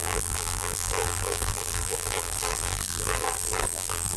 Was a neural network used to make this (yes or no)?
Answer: yes